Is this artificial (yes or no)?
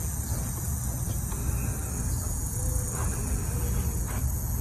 no